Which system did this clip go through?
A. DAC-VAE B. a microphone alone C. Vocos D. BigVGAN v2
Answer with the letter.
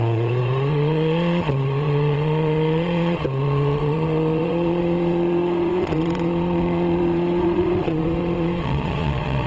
C